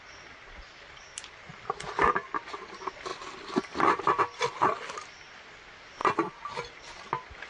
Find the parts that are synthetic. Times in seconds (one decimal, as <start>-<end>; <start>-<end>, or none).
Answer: none